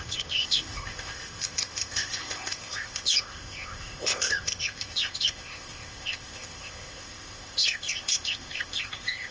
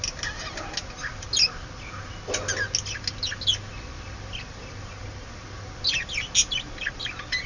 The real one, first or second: second